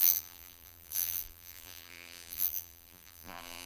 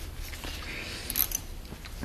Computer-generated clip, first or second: first